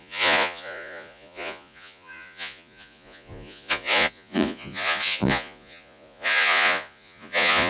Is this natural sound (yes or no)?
no